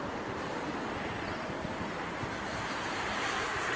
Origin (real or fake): fake